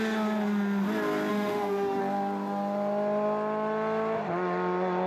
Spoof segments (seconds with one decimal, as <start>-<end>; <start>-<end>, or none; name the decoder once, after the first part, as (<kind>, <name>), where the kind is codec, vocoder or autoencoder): 1.3-2.0 (autoencoder, DAC-VAE)